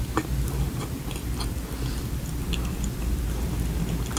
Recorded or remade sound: recorded